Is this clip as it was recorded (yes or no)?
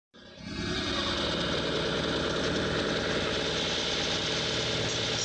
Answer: yes